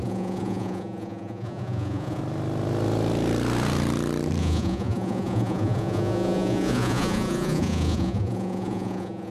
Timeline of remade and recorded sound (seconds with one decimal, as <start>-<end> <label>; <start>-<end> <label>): 0.0-2.2 remade; 2.2-4.4 recorded; 4.4-9.3 remade